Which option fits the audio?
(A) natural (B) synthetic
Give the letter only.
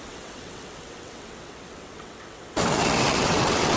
B